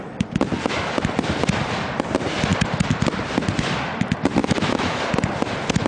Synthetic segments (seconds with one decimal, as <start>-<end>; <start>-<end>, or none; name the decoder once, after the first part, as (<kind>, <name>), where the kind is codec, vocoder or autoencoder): 4.4-5.0 (autoencoder, DAC-VAE)